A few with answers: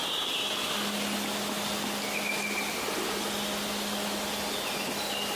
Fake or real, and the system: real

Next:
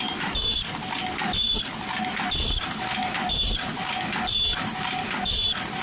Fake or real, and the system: real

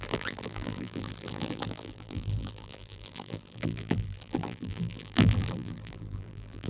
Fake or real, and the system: fake, vocoder, BigVGAN v2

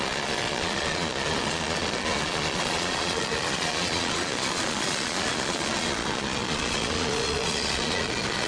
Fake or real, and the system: fake, vocoder, Vocos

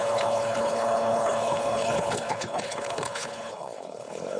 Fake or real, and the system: fake, codec, HILCodec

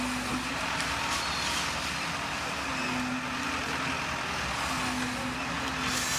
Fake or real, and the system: real